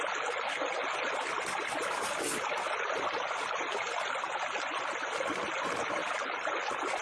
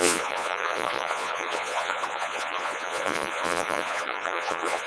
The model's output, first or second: second